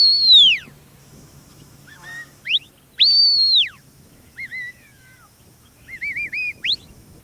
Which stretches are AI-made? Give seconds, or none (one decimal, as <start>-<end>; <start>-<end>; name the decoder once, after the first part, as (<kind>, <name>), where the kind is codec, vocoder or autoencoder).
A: 1.0-2.7 (autoencoder, DAC-VAE); 3.2-7.2